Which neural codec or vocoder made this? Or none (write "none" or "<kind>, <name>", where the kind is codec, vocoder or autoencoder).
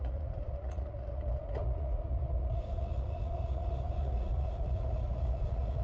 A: vocoder, Vocos